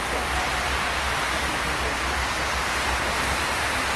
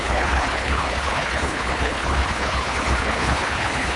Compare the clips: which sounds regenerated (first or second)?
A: second